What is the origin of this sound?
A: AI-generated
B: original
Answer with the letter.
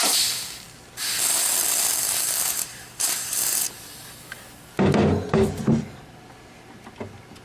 B